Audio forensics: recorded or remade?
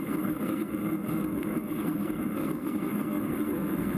remade